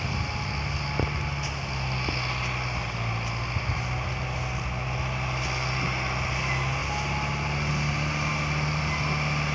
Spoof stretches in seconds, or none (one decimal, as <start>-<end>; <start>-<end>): none